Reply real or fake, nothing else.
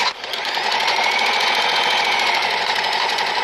fake